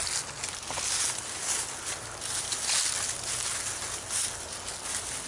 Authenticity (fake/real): real